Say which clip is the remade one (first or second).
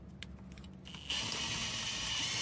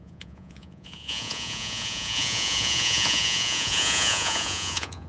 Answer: second